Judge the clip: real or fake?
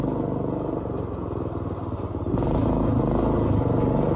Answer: real